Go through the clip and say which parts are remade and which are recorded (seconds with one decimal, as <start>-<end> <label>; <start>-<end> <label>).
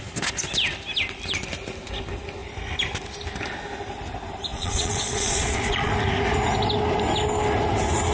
0.0-4.5 recorded; 4.5-5.9 remade; 5.9-8.1 recorded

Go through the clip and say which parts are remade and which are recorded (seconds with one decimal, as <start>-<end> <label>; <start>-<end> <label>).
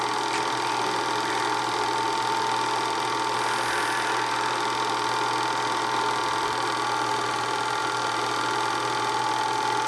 0.0-9.9 recorded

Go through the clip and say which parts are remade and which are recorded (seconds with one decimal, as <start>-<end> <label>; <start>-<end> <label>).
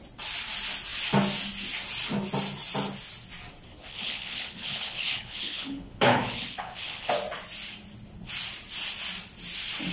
0.0-3.7 recorded; 3.7-7.1 remade; 7.1-9.9 recorded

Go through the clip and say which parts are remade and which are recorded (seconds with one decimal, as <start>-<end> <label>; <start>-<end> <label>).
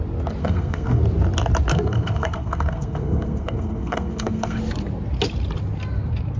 0.0-0.4 recorded; 0.4-1.0 remade; 1.0-1.7 recorded; 1.7-4.6 remade; 4.6-6.4 recorded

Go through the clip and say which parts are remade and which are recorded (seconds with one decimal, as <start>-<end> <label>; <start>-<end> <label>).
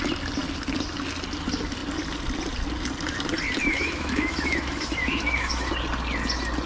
0.0-3.6 recorded; 3.6-5.7 remade; 5.7-6.7 recorded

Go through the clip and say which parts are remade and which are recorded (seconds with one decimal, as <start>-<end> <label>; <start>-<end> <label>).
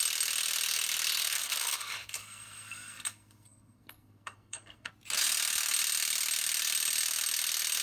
0.0-1.2 recorded; 1.2-4.9 remade; 4.9-7.8 recorded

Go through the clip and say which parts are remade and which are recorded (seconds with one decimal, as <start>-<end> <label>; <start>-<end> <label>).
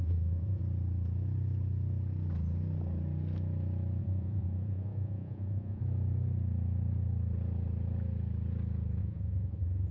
0.0-0.6 remade; 0.6-4.0 recorded; 4.0-5.8 remade; 5.8-9.0 recorded; 9.0-9.9 remade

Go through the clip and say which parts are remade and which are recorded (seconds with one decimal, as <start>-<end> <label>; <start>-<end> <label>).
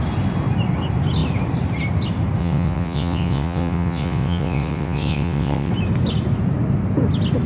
0.0-2.4 recorded; 2.4-5.7 remade; 5.7-7.5 recorded